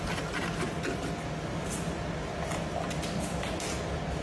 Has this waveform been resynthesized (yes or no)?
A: no